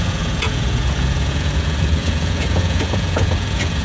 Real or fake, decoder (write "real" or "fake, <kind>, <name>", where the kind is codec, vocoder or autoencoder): fake, vocoder, Vocos